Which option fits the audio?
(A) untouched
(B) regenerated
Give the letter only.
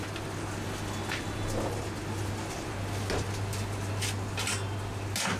A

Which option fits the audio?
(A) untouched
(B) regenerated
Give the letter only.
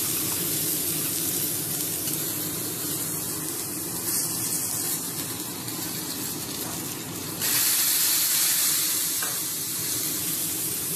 A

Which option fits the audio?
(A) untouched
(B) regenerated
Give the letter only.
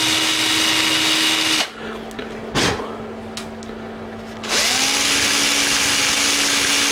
A